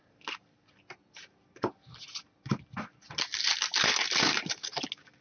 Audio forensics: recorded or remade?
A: recorded